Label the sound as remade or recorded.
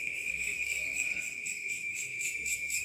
remade